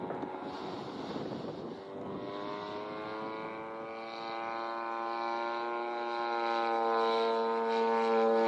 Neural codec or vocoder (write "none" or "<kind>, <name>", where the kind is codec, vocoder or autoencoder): none